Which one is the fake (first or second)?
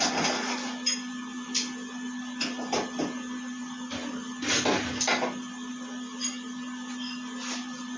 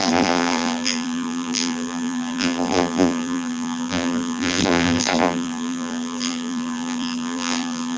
second